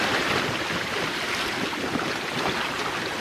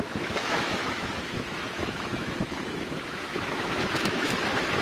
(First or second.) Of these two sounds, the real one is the first